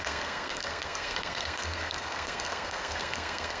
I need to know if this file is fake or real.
fake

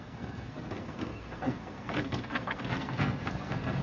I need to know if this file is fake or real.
fake